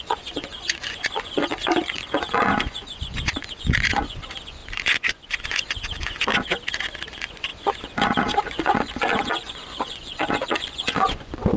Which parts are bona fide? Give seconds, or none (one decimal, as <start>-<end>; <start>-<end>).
6.3-7.1